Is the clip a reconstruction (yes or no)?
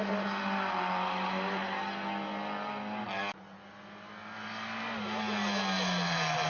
no